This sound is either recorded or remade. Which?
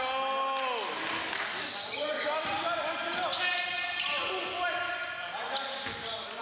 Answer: recorded